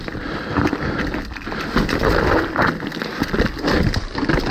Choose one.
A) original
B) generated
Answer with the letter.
A